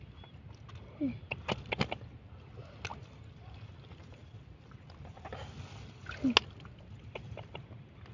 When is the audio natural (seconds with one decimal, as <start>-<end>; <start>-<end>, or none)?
0.0-8.1